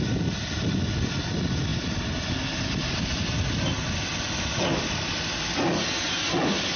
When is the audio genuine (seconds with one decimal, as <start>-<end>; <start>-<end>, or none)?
0.0-6.8